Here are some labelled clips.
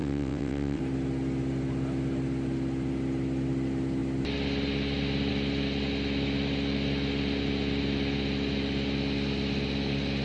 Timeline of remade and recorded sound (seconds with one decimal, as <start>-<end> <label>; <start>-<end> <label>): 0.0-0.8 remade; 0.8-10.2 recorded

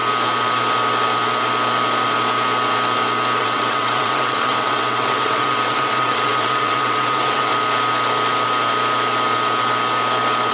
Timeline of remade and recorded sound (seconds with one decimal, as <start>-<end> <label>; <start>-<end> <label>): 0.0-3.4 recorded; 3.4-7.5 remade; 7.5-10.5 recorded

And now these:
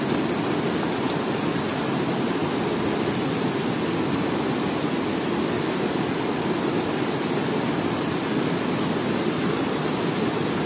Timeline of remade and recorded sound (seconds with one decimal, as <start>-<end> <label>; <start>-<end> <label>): 0.0-10.7 recorded